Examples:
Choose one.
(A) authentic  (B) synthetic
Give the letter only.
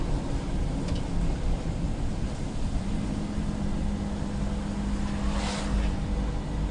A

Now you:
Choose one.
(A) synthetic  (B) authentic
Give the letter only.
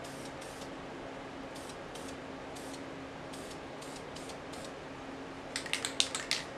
B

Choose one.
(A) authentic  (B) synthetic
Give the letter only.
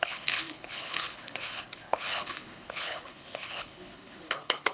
B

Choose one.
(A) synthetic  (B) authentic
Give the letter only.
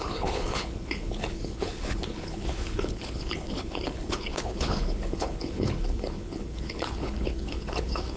A